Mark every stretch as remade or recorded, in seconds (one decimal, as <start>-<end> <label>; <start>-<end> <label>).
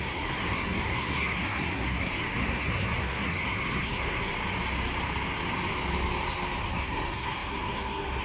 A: 0.0-4.3 remade; 4.3-6.7 recorded; 6.7-8.2 remade